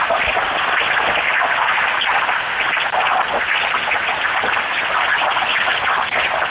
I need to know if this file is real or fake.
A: real